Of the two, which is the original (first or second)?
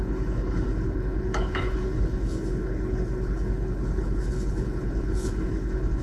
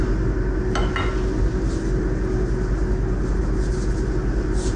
second